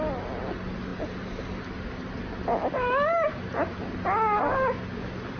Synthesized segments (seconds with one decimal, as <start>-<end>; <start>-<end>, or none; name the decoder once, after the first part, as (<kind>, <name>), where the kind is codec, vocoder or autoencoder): none